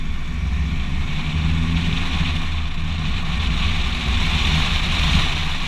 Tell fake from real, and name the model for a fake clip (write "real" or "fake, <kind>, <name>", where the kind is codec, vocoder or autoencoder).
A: real